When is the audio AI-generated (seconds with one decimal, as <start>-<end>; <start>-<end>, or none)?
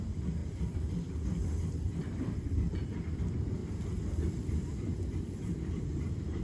0.0-3.6; 5.2-6.4